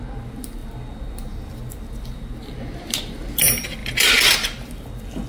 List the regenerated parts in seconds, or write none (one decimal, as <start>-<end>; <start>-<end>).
none